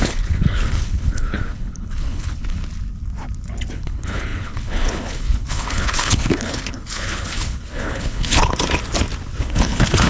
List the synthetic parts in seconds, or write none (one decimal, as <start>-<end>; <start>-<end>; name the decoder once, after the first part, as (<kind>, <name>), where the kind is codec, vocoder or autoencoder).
0.0-2.6 (codec, HILCodec); 3.7-8.4; 9.4-10.1